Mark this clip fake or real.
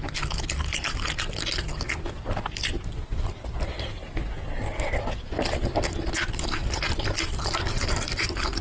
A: real